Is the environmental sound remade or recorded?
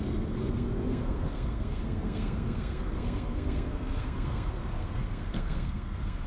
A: remade